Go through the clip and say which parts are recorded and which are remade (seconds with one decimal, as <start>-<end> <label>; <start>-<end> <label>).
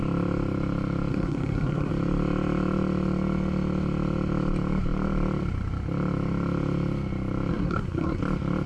0.0-1.1 recorded; 1.1-1.9 remade; 1.9-7.5 recorded; 7.5-8.2 remade; 8.2-8.7 recorded